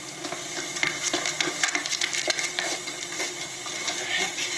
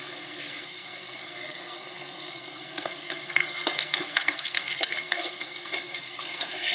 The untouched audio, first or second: first